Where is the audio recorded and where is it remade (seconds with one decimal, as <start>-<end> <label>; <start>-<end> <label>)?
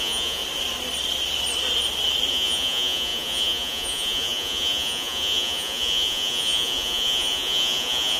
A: 0.0-0.4 remade; 0.4-2.3 recorded; 2.3-8.2 remade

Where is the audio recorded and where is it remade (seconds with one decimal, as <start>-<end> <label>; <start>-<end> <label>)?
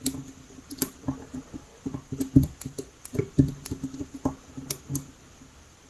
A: 0.0-5.9 recorded